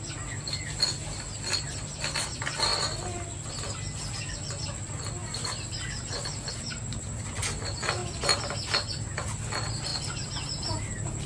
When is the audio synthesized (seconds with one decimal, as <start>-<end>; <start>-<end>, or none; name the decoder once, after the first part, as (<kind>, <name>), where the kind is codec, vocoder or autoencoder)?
none